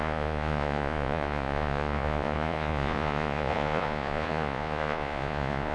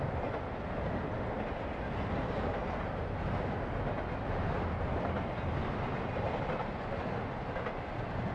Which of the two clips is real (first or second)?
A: second